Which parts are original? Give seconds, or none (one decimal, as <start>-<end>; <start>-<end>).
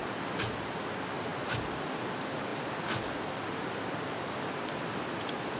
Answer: 0.0-5.6